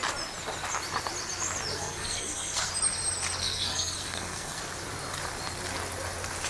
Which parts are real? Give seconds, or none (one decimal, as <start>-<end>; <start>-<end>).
0.0-1.7; 2.7-3.4; 4.6-6.5